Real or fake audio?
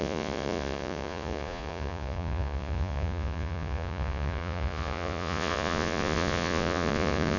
fake